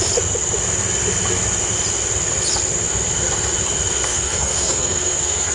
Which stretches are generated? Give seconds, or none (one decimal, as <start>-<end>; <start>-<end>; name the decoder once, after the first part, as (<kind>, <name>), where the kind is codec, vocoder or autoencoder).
4.1-5.5 (codec, SNAC)